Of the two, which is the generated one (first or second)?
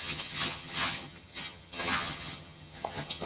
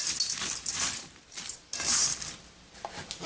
first